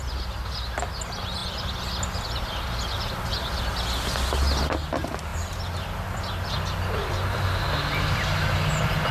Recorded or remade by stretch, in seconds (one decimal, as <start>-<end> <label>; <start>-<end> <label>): 0.0-9.1 recorded

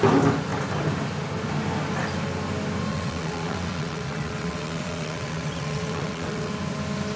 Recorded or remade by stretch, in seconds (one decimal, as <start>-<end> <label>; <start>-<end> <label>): 0.0-2.9 recorded; 2.9-6.5 remade; 6.5-7.2 recorded

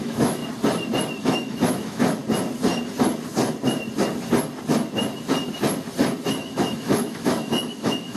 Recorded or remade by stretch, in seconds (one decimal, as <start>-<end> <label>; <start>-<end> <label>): 0.0-0.4 remade; 0.4-1.2 recorded; 1.2-2.2 remade; 2.2-6.3 recorded; 6.3-8.2 remade